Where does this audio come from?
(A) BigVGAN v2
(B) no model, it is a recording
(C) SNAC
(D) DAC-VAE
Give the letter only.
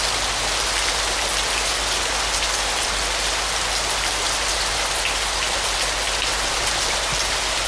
B